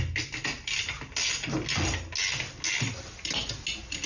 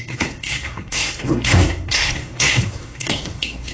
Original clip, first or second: first